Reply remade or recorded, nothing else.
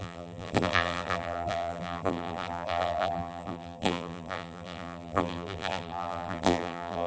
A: remade